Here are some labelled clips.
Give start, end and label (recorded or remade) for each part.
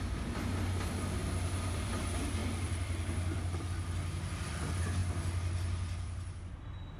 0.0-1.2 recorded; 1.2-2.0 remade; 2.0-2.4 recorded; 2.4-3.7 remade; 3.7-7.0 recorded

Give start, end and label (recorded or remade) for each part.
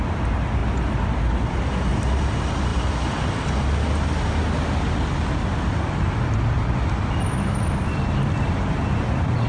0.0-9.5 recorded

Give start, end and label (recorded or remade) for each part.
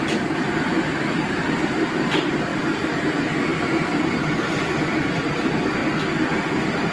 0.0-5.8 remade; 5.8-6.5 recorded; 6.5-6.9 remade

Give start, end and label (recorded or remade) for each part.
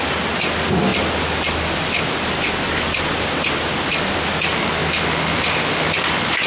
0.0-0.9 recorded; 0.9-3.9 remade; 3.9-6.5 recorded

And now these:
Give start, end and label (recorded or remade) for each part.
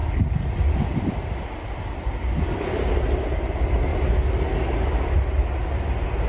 0.0-6.3 recorded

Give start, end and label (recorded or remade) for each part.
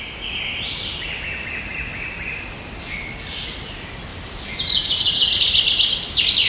0.0-4.1 recorded; 4.1-5.4 remade; 5.4-6.5 recorded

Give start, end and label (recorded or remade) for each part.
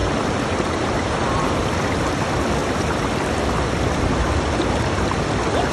0.0-1.6 remade; 1.6-5.7 recorded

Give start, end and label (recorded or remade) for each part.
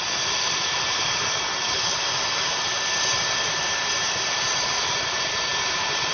0.0-6.1 recorded